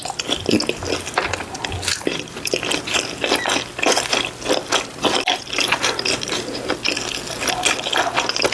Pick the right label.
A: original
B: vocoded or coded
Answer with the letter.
A